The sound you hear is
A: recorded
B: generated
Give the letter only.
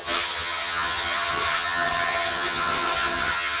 B